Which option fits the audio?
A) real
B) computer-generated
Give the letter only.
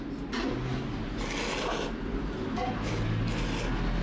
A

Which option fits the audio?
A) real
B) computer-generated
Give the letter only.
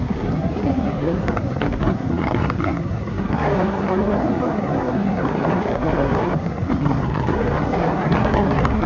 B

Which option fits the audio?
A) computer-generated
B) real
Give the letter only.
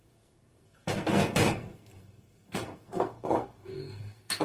A